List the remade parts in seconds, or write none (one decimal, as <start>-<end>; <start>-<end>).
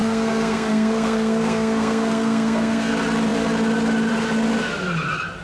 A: 0.0-2.9